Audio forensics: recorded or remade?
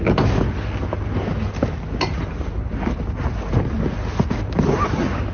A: recorded